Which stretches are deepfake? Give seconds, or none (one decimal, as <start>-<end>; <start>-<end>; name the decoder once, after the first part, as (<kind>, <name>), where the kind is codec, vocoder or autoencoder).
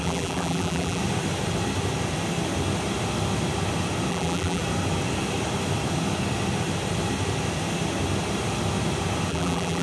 0.0-1.0 (vocoder, BigVGAN v2); 4.1-4.6; 9.3-9.8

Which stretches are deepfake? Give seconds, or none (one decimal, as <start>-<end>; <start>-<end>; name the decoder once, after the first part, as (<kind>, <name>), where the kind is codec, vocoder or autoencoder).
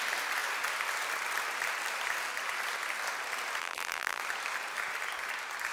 3.6-4.2 (vocoder, BigVGAN v2)